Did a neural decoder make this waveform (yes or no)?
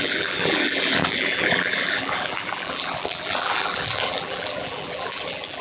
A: yes